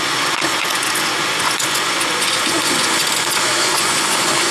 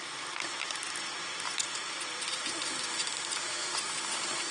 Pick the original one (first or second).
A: second